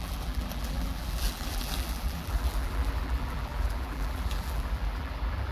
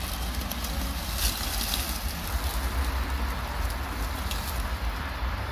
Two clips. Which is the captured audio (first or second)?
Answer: second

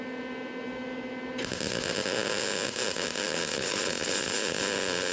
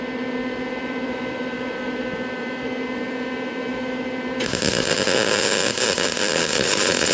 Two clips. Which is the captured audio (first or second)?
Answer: first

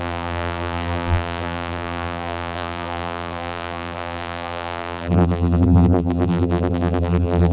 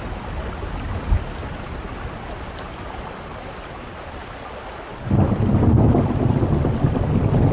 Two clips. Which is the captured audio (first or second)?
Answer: second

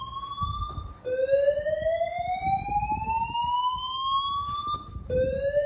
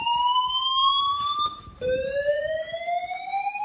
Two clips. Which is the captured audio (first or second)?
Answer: first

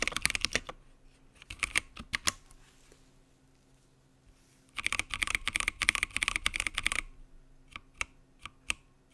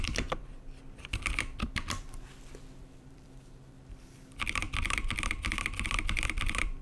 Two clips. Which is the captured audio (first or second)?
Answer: first